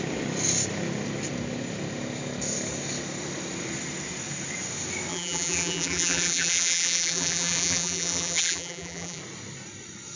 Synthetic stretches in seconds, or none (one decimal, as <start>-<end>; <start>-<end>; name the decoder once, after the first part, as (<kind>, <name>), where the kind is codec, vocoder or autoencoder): 5.1-9.2 (vocoder, BigVGAN v2)